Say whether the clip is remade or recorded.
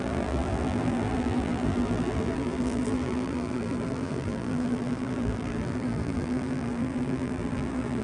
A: remade